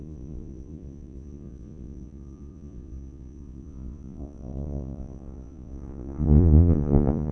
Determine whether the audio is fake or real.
fake